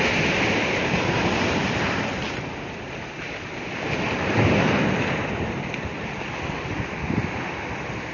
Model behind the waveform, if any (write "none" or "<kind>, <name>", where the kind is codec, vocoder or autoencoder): none